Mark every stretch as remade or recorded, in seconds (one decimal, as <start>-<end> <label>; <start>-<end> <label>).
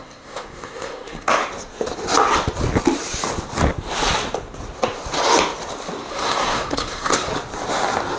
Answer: 0.0-1.4 remade; 1.4-6.1 recorded; 6.1-7.3 remade; 7.3-8.2 recorded